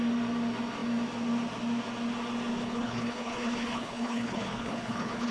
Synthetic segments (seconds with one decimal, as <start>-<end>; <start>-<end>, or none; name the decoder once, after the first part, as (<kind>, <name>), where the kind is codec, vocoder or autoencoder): 2.6-5.3 (codec, HILCodec)